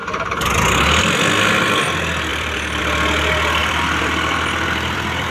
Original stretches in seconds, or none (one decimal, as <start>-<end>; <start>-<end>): 1.8-2.3; 2.8-3.6